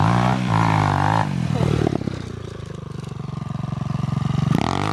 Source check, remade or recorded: recorded